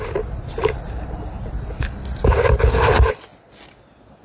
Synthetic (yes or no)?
no